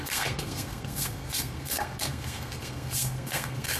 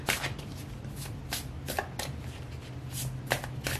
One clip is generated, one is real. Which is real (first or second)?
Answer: second